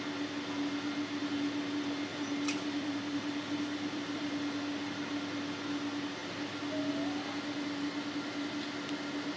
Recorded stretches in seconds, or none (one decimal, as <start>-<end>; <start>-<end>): 0.0-2.1; 4.3-9.4